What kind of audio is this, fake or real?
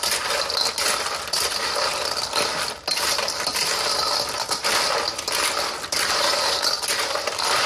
real